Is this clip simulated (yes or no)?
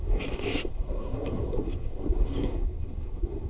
yes